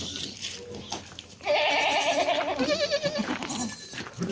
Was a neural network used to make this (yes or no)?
no